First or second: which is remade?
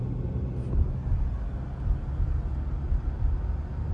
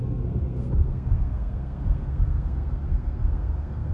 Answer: second